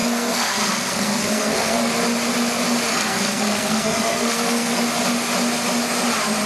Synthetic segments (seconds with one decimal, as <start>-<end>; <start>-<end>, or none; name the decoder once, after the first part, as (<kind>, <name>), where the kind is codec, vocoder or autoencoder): 0.0-1.9 (codec, SNAC); 2.9-4.8